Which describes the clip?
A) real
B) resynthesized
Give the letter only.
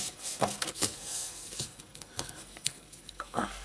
B